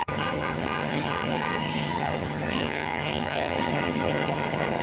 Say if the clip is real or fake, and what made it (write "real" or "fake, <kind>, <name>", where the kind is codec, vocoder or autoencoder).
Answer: fake, vocoder, HiFi-GAN